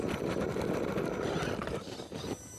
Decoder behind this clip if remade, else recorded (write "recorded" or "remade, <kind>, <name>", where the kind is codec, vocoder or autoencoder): recorded